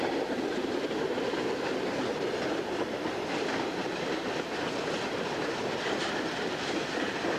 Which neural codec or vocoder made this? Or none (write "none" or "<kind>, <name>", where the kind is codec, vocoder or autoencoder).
none